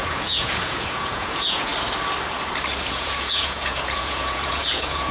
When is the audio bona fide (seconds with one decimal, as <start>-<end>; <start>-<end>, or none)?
1.7-2.8